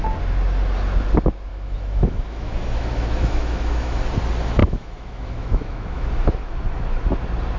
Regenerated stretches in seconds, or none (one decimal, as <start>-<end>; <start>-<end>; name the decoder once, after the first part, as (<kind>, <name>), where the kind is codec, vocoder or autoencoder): 1.5-4.0 (autoencoder, DAC-VAE); 4.6-6.5

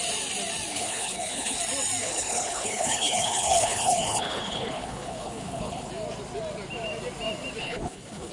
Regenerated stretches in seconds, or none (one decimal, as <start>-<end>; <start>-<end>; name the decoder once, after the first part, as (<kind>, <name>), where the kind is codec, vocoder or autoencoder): 0.7-1.6 (codec, HILCodec); 2.0-5.9; 7.6-8.3

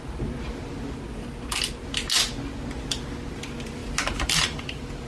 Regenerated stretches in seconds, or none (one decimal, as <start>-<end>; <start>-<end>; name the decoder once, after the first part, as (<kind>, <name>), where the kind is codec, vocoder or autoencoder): 3.8-5.1 (vocoder, BigVGAN v2)

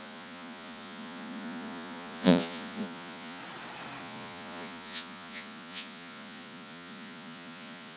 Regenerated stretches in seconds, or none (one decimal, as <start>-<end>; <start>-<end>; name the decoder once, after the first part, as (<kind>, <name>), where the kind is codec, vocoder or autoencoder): 0.0-3.4 (vocoder, Vocos); 4.0-8.0

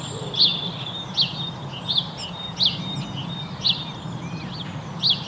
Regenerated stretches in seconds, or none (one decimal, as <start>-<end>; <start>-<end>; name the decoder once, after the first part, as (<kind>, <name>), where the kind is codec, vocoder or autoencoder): none